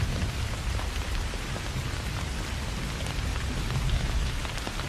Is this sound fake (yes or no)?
no